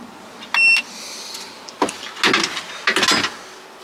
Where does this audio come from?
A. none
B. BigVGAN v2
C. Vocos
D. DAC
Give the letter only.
A